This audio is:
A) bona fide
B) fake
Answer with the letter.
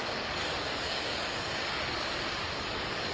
B